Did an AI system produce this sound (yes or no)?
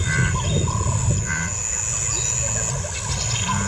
no